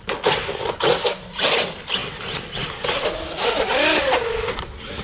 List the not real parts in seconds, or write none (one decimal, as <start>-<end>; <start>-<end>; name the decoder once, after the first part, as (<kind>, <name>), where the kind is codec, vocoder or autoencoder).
none